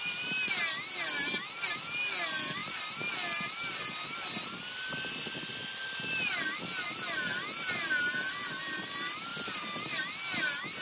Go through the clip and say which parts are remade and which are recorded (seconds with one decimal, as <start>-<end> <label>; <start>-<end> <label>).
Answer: 0.0-10.8 recorded